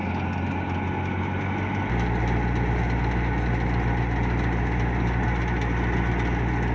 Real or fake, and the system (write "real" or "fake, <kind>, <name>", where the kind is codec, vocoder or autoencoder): real